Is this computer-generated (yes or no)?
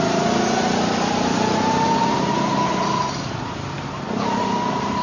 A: no